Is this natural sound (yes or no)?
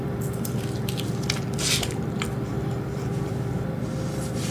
no